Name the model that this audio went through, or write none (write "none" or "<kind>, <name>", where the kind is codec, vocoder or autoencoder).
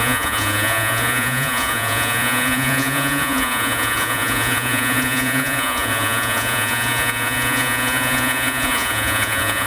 vocoder, Vocos